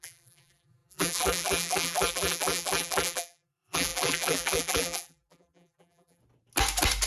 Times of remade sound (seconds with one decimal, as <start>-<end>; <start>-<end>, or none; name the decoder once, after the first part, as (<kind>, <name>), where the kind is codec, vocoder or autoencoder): 0.0-6.2 (vocoder, BigVGAN v2)